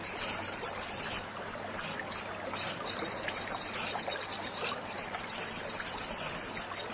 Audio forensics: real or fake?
real